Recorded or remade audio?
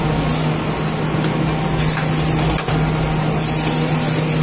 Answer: recorded